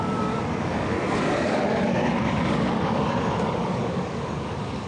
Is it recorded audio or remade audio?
remade